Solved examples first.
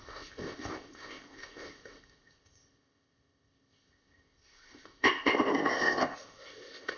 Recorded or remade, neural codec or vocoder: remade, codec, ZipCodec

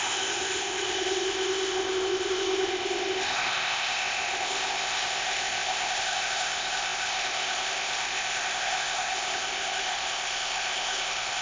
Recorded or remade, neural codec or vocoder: remade, codec, ZipCodec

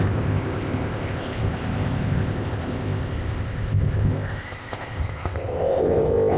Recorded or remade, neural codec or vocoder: remade, codec, ZipCodec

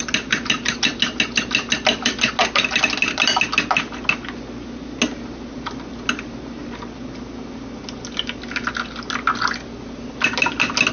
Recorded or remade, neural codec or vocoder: recorded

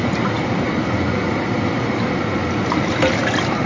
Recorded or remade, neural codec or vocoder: recorded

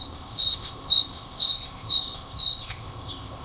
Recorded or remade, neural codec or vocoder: remade, codec, ZipCodec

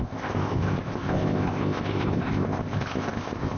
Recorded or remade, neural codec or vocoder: remade, codec, ZipCodec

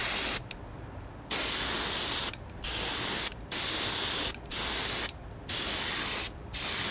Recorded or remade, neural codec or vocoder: recorded